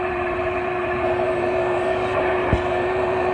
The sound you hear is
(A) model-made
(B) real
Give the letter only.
A